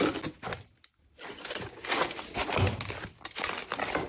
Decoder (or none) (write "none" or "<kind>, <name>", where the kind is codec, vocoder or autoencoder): none